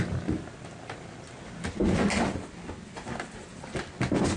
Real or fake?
real